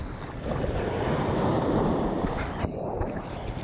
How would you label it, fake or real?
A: real